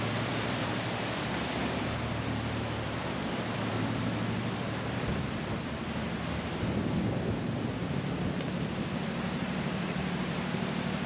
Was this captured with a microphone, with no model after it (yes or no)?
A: no